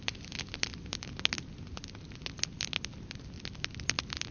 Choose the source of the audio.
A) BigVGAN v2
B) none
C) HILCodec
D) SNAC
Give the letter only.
B